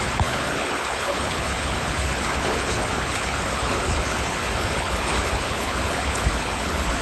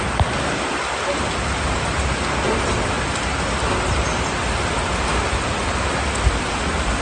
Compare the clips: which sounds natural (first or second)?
second